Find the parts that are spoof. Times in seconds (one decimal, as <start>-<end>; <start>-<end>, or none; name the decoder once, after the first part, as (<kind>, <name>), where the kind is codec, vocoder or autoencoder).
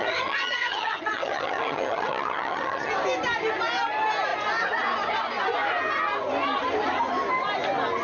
0.0-2.9 (vocoder, HiFi-GAN)